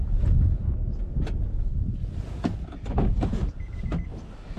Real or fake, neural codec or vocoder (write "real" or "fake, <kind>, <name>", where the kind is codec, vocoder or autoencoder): real